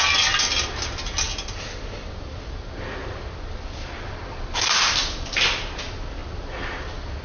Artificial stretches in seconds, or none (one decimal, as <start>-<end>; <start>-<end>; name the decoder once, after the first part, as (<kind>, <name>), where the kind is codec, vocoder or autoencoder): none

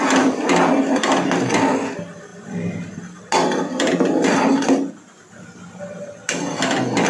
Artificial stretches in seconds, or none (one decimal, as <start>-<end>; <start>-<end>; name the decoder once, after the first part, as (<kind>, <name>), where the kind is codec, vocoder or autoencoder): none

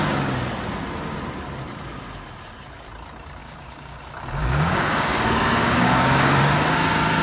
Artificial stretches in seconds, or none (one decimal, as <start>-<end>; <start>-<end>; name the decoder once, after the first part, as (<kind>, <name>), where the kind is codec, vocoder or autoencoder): 3.4-4.0 (codec, DAC); 4.4-6.4